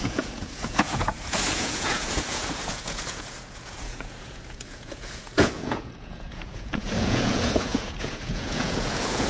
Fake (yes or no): yes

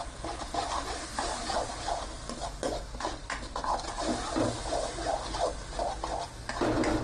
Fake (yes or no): no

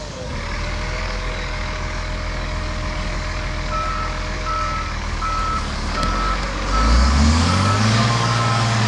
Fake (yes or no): yes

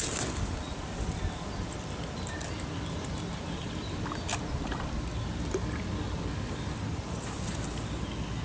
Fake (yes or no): no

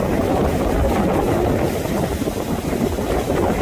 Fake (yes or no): no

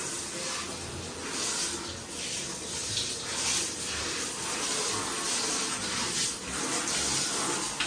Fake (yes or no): no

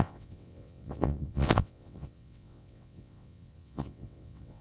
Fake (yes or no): yes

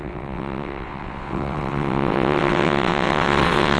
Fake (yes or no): yes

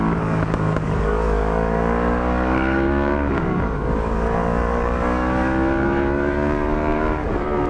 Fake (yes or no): yes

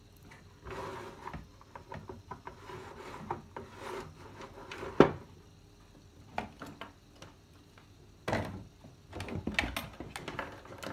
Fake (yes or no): no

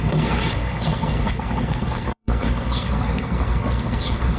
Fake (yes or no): yes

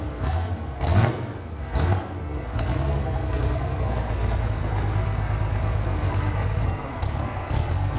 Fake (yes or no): yes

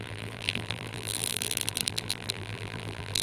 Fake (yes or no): yes